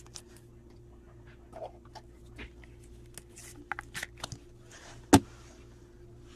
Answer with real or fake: real